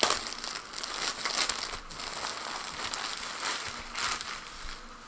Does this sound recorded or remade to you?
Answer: recorded